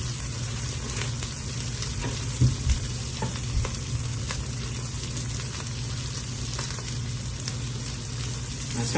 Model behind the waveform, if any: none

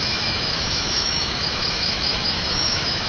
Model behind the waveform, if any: autoencoder, DAC-VAE